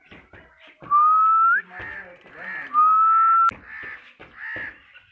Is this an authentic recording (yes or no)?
yes